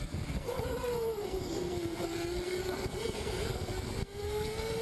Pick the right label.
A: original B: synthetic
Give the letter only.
B